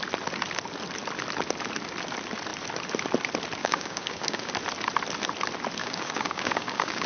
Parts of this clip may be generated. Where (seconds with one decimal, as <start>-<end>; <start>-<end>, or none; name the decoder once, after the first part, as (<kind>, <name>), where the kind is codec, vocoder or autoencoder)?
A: 3.6-4.5 (codec, DAC); 5.8-7.1